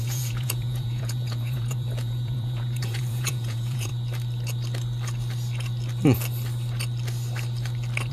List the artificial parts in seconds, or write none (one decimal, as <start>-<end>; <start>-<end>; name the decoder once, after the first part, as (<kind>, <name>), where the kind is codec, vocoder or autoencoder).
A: 0.0-3.9 (vocoder, Vocos)